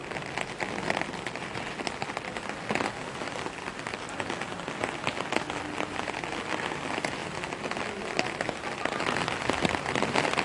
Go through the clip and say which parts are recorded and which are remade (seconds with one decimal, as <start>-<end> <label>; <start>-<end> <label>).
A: 0.0-10.4 recorded